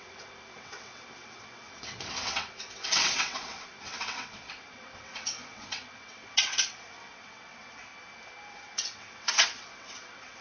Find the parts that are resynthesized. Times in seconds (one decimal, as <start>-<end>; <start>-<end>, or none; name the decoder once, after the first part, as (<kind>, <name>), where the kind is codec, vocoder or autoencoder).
0.0-7.9 (vocoder, WaveNeXt); 8.5-10.4